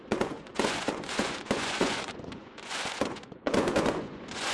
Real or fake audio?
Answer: fake